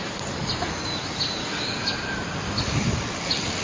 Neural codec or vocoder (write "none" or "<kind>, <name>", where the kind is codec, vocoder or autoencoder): none